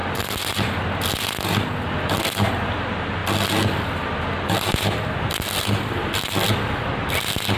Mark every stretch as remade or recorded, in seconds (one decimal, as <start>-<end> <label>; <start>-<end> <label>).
0.0-7.6 recorded